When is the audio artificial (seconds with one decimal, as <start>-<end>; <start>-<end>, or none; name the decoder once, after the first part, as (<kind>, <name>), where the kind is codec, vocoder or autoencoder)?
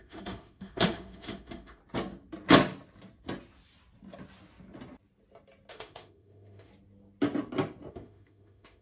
0.0-1.8 (autoencoder, DAC-VAE); 5.7-6.7; 7.9-8.8